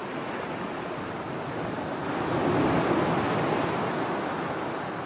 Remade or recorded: recorded